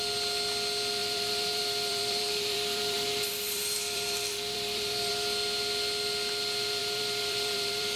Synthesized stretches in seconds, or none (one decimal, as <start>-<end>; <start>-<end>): 1.0-5.1; 6.8-8.0